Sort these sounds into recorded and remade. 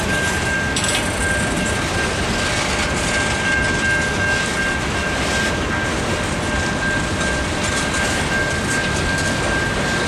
recorded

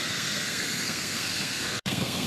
remade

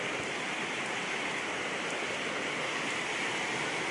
recorded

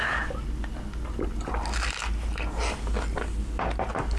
recorded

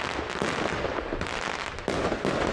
recorded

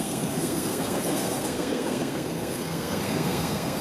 remade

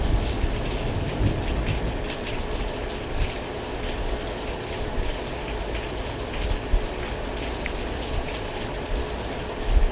recorded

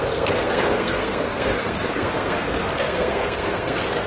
remade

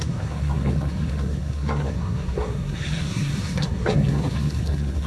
remade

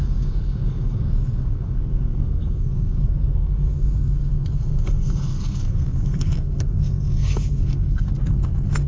remade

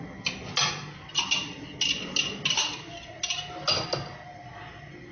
recorded